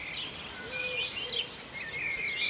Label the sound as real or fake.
real